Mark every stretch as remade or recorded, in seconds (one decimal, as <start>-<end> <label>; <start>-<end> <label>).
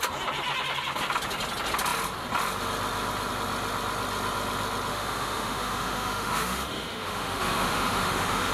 0.0-4.9 recorded; 4.9-8.5 remade